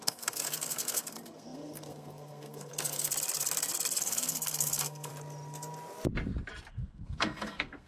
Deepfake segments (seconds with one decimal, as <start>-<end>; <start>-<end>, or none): 0.0-3.1; 4.0-5.1; 6.7-7.9